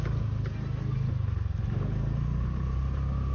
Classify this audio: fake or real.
real